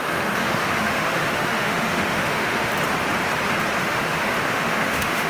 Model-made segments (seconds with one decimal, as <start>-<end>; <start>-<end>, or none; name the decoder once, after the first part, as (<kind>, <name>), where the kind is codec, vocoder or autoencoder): 0.0-2.7 (autoencoder, DAC-VAE); 3.8-5.3